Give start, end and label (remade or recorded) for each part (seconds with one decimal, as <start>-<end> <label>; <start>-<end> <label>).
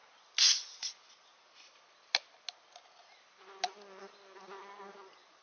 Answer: 0.0-5.4 recorded